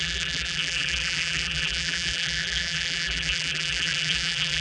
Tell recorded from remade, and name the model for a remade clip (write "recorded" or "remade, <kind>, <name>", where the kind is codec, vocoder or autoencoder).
remade, vocoder, BigVGAN v2